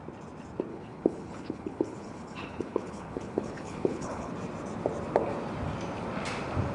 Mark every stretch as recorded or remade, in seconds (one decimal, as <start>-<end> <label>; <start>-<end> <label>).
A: 0.0-0.7 recorded; 0.7-4.3 remade; 4.3-6.7 recorded